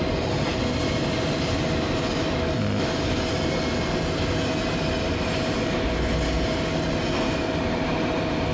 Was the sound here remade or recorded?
recorded